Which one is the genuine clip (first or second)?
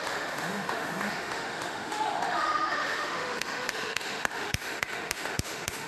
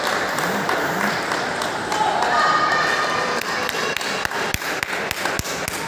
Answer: second